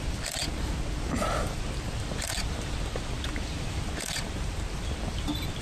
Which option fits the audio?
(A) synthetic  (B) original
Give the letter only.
B